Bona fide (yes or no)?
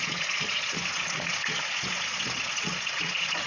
no